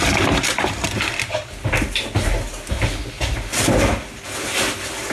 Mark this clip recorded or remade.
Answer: recorded